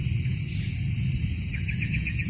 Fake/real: real